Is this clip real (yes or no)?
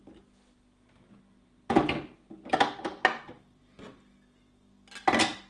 yes